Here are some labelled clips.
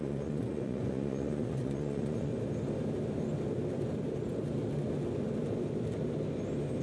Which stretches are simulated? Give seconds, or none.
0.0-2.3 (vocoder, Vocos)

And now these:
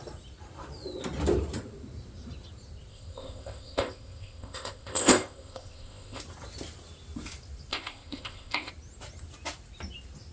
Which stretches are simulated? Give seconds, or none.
2.9-6.2 (codec, ZipCodec); 7.7-8.7

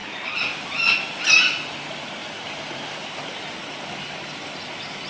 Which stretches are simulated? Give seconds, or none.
0.0-0.6 (vocoder, BigVGAN v2); 2.2-3.2

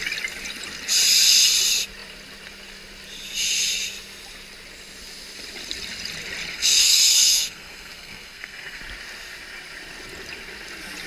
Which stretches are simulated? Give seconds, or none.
6.5-8.8 (codec, SNAC)